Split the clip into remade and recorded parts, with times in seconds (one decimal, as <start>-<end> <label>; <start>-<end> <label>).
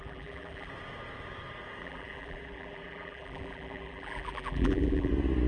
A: 0.0-0.7 remade; 0.7-1.8 recorded; 1.8-5.1 remade; 5.1-5.5 recorded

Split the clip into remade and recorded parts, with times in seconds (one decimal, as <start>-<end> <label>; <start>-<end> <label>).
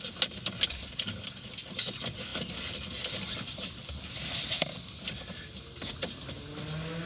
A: 0.0-7.1 recorded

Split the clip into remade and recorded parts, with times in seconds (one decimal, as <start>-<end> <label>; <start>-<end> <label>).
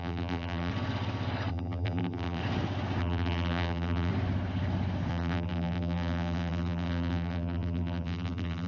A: 0.0-0.7 remade; 0.7-1.5 recorded; 1.5-2.4 remade; 2.4-3.0 recorded; 3.0-4.1 remade; 4.1-5.1 recorded; 5.1-8.7 remade